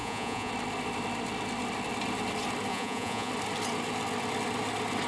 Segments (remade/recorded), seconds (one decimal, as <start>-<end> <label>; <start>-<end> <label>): 0.0-0.5 remade; 0.5-2.7 recorded; 2.7-3.3 remade; 3.3-5.1 recorded